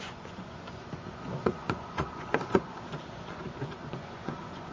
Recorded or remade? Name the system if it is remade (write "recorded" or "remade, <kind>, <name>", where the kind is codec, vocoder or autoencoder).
remade, vocoder, Vocos